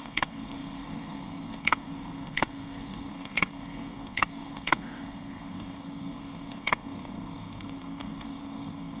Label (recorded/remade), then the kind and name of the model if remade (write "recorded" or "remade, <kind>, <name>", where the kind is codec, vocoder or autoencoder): remade, codec, SNAC